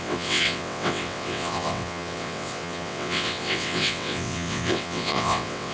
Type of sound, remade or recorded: remade